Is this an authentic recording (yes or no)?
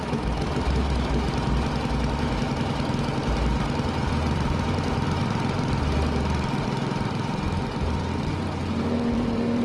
no